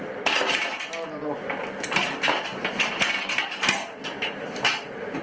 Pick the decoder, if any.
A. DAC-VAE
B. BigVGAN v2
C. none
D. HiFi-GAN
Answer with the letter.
C